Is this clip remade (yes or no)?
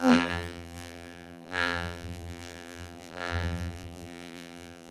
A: yes